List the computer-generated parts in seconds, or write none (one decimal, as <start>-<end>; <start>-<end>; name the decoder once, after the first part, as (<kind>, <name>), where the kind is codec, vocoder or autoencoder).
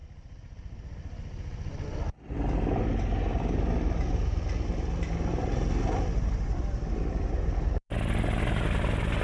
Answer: none